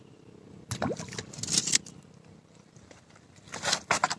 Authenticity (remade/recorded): recorded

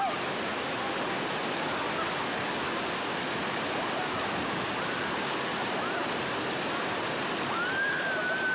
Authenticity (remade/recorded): recorded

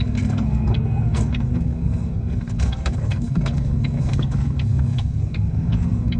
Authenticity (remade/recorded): remade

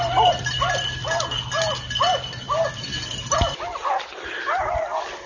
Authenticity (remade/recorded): recorded